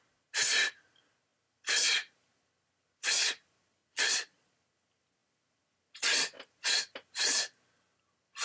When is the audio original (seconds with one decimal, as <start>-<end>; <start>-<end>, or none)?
0.0-3.8; 4.5-8.4